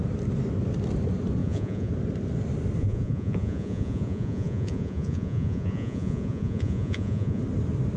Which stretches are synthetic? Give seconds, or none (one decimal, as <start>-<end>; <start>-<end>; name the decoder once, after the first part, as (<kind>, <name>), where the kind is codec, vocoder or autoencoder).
1.4-1.9 (vocoder, Vocos); 2.8-7.4